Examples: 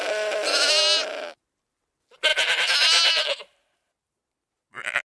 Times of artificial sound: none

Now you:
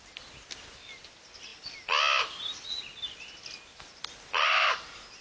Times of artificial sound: none

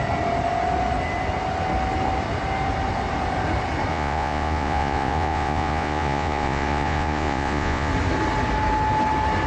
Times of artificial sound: 3.9-7.9 (vocoder, Vocos)

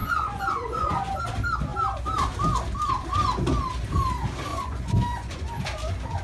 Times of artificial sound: 0.0-1.2 (vocoder, Vocos); 4.5-5.5

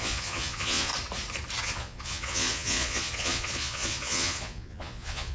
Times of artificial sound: 0.0-0.9 (vocoder, Vocos); 1.6-5.3